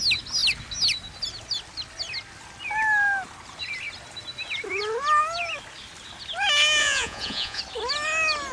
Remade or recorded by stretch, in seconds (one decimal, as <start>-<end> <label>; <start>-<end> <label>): 0.0-6.8 recorded; 6.8-7.6 remade; 7.6-8.5 recorded